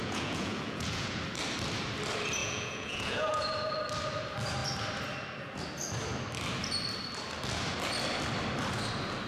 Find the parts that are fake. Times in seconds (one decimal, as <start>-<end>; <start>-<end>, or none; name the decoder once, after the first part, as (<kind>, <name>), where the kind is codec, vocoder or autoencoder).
0.0-1.2 (vocoder, Vocos); 2.4-3.5